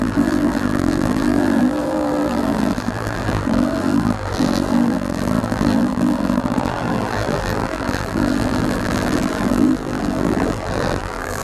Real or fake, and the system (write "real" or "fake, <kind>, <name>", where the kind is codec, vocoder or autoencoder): fake, vocoder, BigVGAN v2